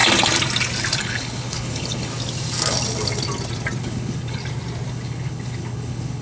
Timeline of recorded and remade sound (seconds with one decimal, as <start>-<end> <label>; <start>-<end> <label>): 0.0-1.0 recorded; 1.0-2.1 remade; 2.1-3.8 recorded; 3.8-4.4 remade; 4.4-4.9 recorded; 4.9-6.2 remade